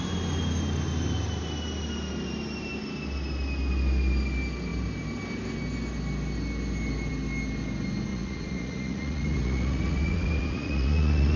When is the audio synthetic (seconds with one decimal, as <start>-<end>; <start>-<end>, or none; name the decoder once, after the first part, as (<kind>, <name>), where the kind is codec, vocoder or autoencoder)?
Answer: 8.1-11.4 (vocoder, Vocos)